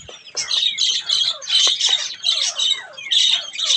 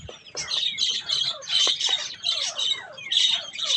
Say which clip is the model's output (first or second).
second